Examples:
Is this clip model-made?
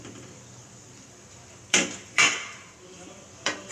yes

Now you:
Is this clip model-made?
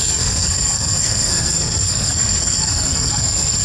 yes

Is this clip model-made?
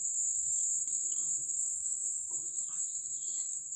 yes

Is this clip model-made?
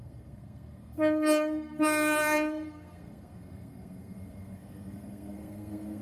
yes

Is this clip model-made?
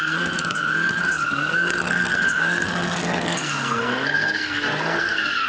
yes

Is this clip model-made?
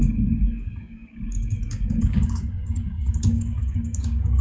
yes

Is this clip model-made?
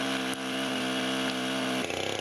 no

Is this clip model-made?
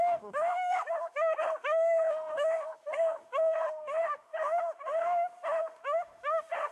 yes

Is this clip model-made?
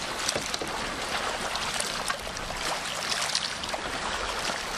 no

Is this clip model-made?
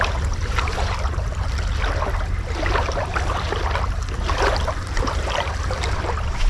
no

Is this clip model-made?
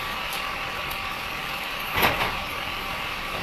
yes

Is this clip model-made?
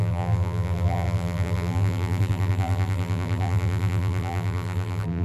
yes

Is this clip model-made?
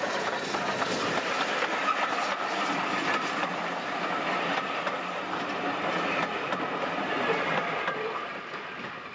no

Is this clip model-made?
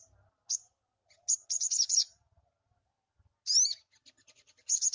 no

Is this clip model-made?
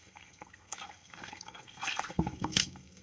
yes